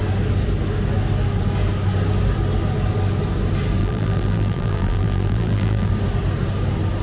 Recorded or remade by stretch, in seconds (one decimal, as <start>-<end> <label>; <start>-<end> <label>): 0.0-3.8 recorded; 3.8-5.9 remade; 5.9-7.0 recorded